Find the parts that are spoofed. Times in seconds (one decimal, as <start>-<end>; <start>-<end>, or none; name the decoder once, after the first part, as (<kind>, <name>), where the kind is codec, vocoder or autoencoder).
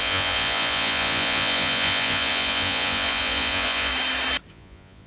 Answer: 0.0-3.9 (vocoder, Vocos); 4.5-5.1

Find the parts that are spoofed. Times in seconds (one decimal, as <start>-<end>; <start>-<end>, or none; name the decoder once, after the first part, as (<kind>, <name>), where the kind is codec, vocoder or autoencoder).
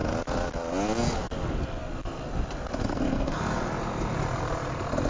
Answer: 2.8-3.4 (codec, SNAC)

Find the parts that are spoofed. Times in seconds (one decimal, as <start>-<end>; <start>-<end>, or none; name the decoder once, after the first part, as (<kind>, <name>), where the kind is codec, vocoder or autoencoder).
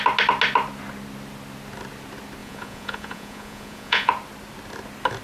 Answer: 2.4-4.1 (vocoder, Vocos)